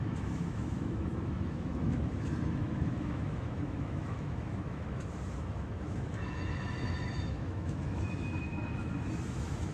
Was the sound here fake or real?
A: fake